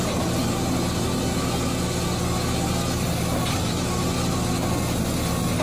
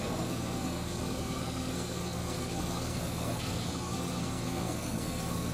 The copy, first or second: second